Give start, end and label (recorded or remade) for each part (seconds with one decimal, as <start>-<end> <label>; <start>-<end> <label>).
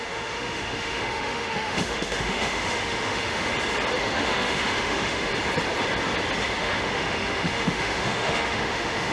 0.0-3.5 remade; 3.5-4.0 recorded; 4.0-5.3 remade; 5.3-6.6 recorded; 6.6-9.1 remade